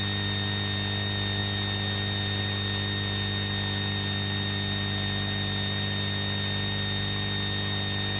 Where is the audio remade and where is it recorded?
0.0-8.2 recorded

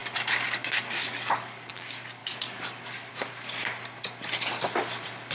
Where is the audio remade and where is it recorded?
0.0-1.7 remade; 1.7-2.2 recorded; 2.2-3.1 remade; 3.1-5.3 recorded

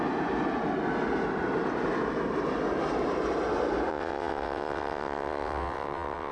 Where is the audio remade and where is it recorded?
0.0-3.9 recorded; 3.9-6.3 remade

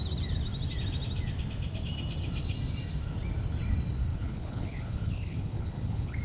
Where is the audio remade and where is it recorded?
0.0-4.1 recorded; 4.1-6.2 remade

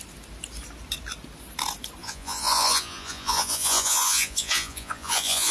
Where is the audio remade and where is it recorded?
0.0-2.0 recorded; 2.0-5.5 remade